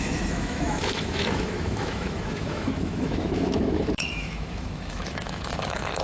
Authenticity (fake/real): fake